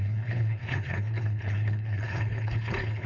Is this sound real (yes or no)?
no